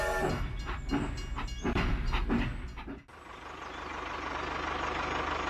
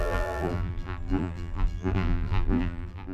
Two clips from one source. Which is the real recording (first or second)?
first